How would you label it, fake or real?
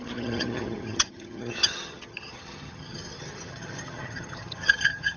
fake